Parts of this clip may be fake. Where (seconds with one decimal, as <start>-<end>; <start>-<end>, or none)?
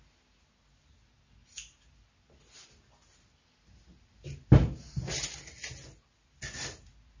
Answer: none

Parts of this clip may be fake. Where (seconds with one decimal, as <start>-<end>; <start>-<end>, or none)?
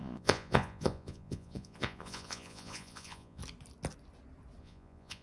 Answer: 0.0-3.4; 4.6-5.2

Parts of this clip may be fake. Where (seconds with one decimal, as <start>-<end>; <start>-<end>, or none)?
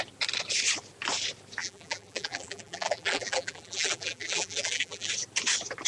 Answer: 1.6-5.1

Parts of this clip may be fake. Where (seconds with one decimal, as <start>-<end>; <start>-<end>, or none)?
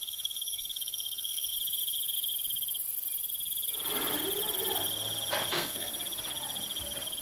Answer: 0.0-1.5; 5.5-5.9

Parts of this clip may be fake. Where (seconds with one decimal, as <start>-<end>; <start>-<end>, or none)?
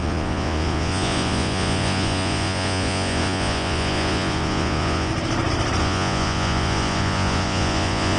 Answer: 0.0-5.1; 5.8-8.2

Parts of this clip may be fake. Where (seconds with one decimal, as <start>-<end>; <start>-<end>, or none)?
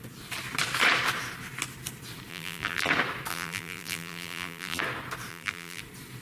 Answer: 2.3-2.9; 3.3-4.8; 5.3-5.8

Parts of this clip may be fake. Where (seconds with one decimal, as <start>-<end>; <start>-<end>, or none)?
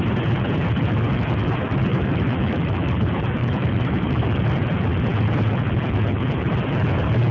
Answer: 1.9-2.9; 3.4-4.4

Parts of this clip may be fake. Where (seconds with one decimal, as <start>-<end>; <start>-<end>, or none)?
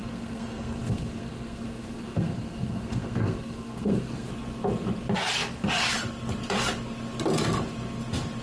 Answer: 0.0-4.3